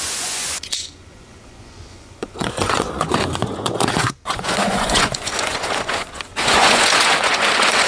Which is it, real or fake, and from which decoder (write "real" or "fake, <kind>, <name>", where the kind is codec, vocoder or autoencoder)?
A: fake, vocoder, Vocos